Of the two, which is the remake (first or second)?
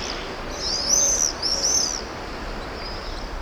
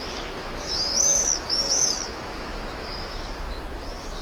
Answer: second